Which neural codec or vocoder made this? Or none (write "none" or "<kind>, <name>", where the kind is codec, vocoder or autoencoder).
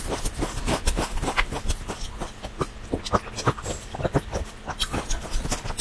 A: none